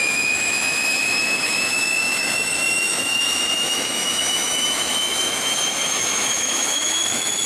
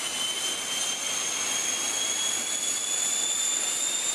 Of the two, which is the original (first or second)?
second